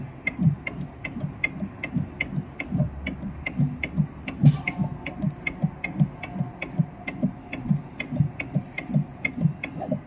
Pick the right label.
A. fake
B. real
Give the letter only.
B